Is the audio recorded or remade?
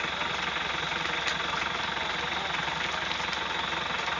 recorded